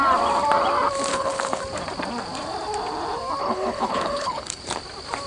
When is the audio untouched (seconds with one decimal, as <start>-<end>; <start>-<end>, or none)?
0.0-1.1; 1.6-3.4; 4.6-5.3